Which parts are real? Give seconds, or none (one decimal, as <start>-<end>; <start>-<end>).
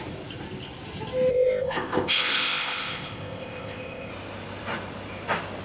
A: 0.0-1.3; 4.1-5.6